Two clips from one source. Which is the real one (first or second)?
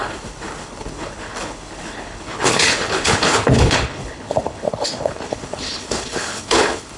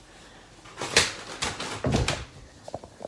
second